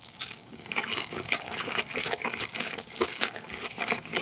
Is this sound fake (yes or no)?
yes